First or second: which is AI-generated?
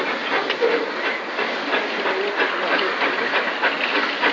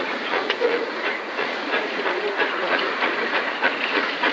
second